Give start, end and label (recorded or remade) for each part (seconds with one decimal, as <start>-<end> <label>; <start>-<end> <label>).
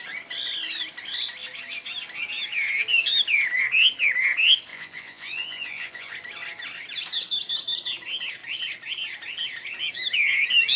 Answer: 0.0-4.7 recorded; 4.7-6.1 remade; 6.1-10.8 recorded